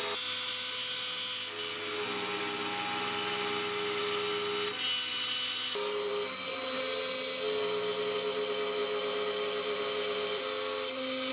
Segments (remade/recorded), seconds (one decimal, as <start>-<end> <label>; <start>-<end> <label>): 0.0-11.3 recorded